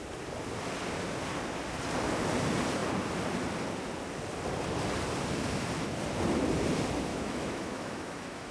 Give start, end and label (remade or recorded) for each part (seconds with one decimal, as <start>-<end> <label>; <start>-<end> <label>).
0.0-7.1 recorded; 7.1-8.5 remade